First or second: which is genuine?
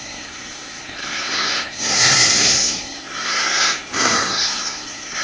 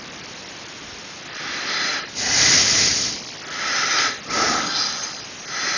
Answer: second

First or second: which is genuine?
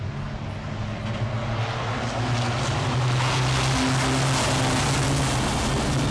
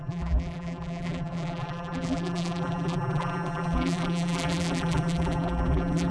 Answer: first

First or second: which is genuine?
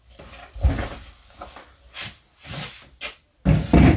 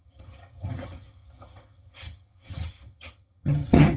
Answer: first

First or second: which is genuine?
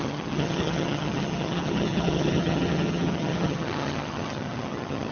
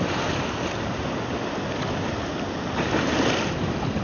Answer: second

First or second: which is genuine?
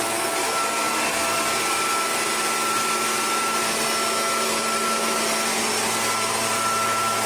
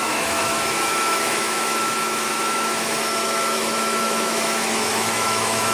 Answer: first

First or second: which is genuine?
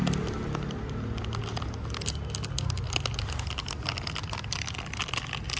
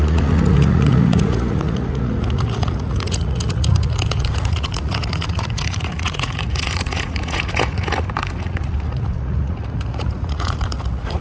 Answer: first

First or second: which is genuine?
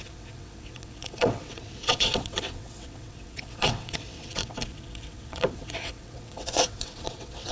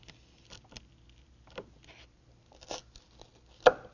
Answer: second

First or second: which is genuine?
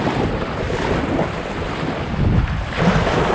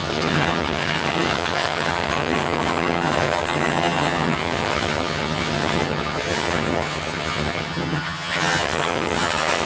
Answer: first